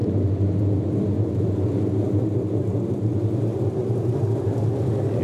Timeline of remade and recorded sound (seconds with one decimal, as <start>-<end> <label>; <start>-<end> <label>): 0.0-5.2 recorded